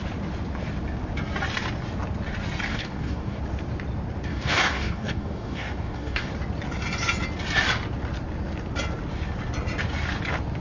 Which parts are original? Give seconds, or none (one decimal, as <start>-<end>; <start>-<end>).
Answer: 0.0-2.7; 3.4-4.3; 6.3-10.6